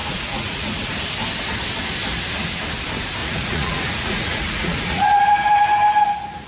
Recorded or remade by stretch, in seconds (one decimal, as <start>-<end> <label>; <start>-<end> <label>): 0.0-0.9 remade; 0.9-3.2 recorded; 3.2-5.3 remade; 5.3-6.5 recorded